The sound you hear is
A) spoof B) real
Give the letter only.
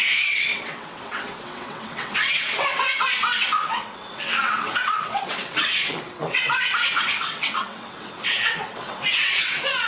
A